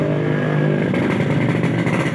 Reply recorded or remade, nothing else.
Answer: recorded